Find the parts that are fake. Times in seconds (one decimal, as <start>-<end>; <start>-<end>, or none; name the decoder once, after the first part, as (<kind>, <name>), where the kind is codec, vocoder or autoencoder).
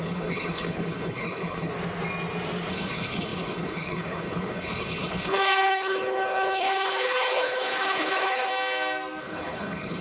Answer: 0.0-1.7 (codec, HILCodec); 2.7-8.5; 9.2-10.0